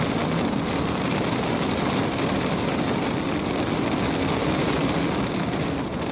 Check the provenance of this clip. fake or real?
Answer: real